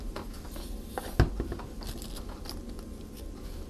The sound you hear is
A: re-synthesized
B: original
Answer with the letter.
B